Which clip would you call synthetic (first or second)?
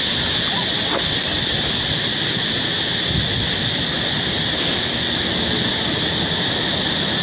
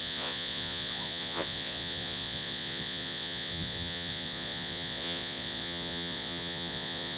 second